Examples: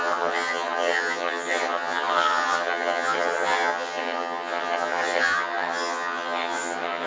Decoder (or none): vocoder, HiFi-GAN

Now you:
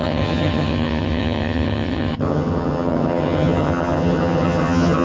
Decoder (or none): vocoder, HiFi-GAN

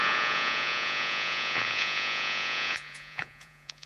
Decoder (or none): vocoder, Vocos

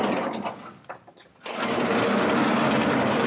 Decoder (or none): none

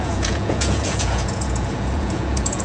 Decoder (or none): vocoder, Vocos